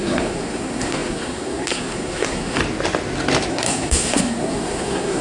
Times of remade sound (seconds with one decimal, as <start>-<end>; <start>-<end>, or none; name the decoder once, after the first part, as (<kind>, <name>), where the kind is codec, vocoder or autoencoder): 0.0-2.6 (codec, SNAC); 3.5-5.2

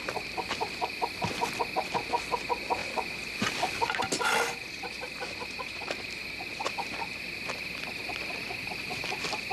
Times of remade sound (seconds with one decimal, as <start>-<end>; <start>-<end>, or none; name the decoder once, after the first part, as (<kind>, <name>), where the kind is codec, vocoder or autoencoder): none

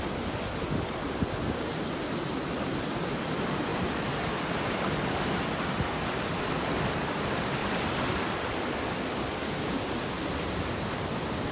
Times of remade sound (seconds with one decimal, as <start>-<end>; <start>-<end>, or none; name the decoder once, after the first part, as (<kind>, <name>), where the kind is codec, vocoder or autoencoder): none